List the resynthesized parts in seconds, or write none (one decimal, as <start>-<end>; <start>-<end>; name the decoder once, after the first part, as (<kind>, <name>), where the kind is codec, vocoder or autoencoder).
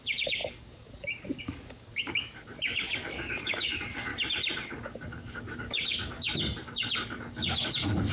0.0-4.1 (codec, DAC); 4.7-8.1